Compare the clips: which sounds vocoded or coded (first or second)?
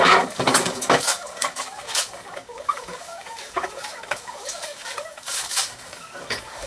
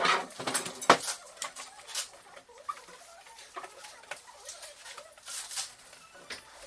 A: first